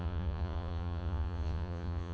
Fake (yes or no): yes